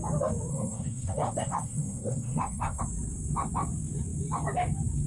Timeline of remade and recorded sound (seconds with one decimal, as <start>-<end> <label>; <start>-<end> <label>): 0.0-0.5 recorded; 0.5-2.8 remade; 2.8-5.1 recorded